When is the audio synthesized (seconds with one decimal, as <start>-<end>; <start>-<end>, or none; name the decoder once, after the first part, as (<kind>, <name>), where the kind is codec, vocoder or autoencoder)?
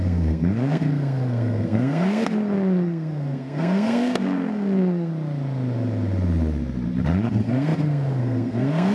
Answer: 0.0-5.1 (codec, SNAC); 7.3-8.9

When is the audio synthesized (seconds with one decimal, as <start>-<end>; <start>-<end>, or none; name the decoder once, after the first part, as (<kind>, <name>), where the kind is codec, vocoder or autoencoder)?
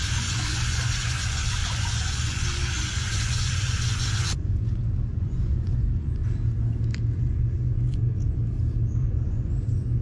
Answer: 0.0-6.2 (vocoder, Vocos); 7.2-8.4; 9.0-10.0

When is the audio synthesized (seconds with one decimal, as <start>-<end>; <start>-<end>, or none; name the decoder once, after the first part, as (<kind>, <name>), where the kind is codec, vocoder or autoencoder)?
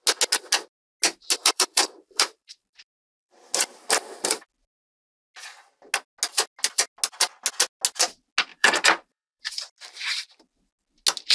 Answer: 1.4-3.5 (vocoder, BigVGAN v2); 8.5-9.5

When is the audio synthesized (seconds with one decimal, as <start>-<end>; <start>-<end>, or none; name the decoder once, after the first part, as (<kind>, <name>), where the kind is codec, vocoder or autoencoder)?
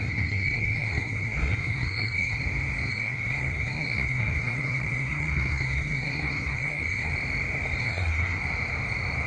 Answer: 0.0-2.4 (codec, SNAC); 2.9-7.1; 7.8-8.4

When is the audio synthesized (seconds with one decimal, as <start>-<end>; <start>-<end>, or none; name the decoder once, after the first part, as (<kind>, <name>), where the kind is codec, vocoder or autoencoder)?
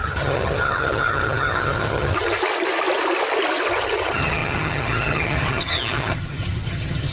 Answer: 0.0-2.4 (vocoder, HiFi-GAN); 3.7-7.1